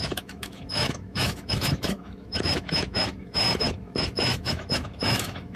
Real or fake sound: fake